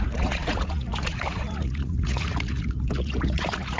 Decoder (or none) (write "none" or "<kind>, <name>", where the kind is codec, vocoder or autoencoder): vocoder, Vocos